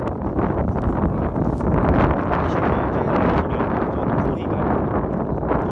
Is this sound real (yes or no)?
yes